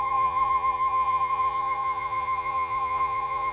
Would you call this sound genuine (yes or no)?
no